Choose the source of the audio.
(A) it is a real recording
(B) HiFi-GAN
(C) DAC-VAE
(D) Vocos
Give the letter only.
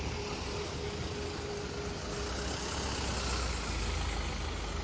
A